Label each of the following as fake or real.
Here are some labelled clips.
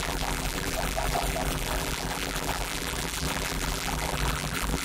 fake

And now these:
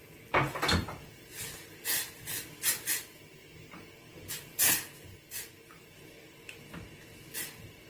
real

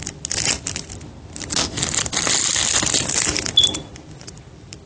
real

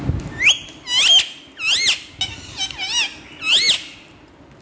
real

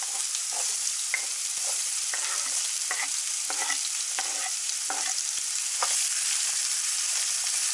fake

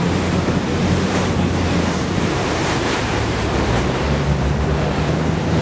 fake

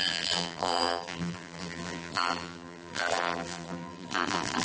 fake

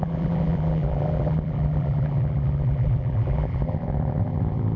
fake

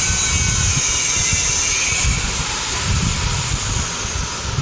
real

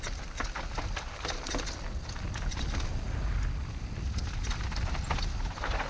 real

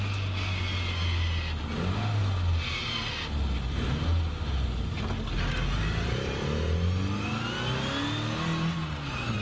real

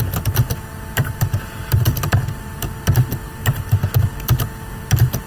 real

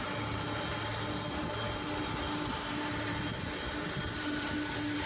real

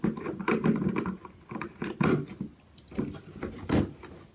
real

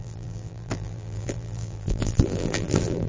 fake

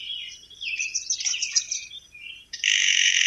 fake